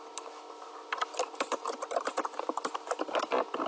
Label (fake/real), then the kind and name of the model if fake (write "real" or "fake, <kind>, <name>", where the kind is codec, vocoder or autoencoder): real